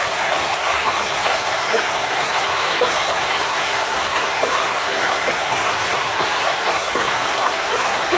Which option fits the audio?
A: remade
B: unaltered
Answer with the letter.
A